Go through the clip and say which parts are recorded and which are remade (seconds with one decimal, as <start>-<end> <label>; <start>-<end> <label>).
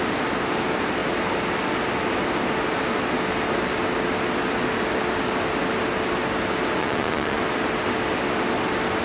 0.0-6.8 recorded; 6.8-7.4 remade; 7.4-9.0 recorded